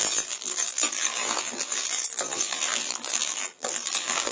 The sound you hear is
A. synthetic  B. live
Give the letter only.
A